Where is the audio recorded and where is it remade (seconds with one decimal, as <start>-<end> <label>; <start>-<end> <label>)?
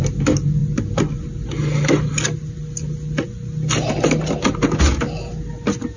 0.0-6.0 recorded